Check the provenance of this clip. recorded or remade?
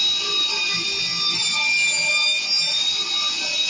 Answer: recorded